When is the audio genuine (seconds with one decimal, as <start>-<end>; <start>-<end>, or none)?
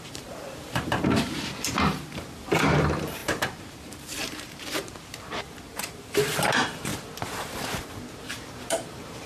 6.9-8.2